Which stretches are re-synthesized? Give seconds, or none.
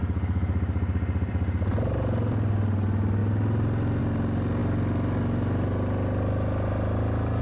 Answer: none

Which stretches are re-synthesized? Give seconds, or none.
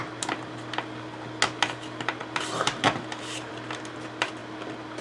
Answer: none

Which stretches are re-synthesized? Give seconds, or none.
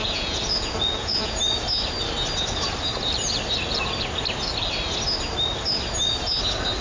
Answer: 0.0-1.4 (vocoder, Vocos)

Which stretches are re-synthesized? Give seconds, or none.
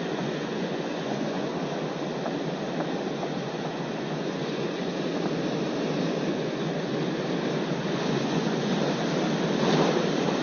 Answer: 0.0-1.5 (vocoder, Vocos); 3.4-4.9; 6.3-6.9; 7.8-8.7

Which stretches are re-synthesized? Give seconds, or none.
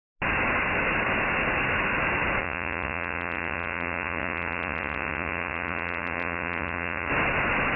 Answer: 2.4-7.1 (vocoder, Vocos)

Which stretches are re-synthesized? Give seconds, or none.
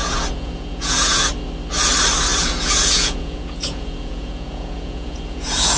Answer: 0.0-1.3 (vocoder, Vocos); 2.3-5.8